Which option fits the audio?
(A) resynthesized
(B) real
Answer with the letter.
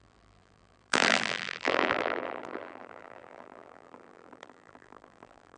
A